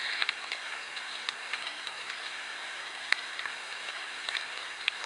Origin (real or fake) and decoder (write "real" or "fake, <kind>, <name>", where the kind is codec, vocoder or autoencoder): fake, codec, SNAC